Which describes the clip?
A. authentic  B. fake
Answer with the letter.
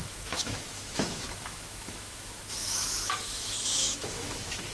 B